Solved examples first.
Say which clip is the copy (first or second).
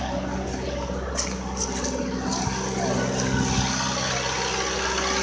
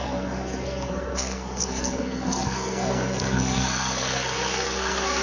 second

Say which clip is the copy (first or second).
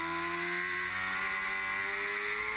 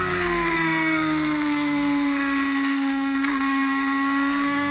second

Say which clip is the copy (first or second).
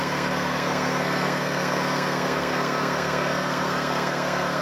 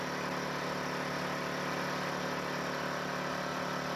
first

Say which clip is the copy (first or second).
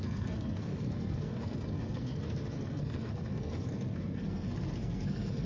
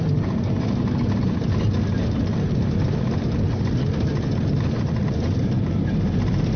first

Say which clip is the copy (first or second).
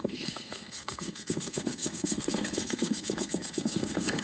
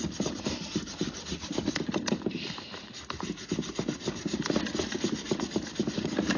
first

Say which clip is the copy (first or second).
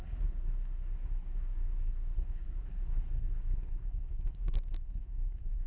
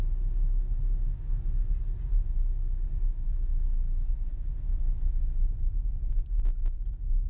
first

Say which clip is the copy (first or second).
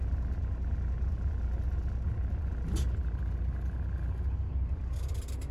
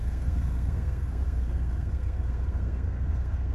second